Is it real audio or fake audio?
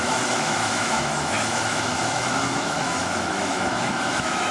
fake